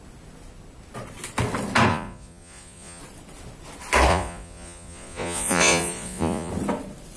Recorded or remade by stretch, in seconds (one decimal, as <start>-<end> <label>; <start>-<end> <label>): 0.0-1.9 recorded; 1.9-3.0 remade; 3.0-4.1 recorded; 4.1-6.5 remade; 6.5-7.2 recorded